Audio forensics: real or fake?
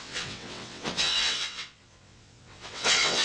fake